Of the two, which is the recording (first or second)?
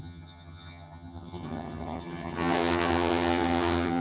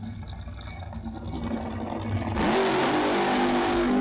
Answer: second